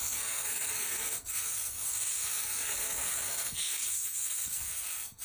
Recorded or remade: remade